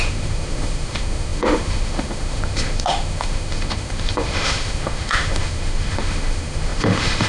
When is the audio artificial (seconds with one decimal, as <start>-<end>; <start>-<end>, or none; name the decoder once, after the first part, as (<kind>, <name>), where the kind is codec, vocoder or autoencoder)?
0.0-7.3 (autoencoder, DAC-VAE)